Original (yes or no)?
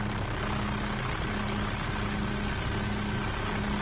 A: yes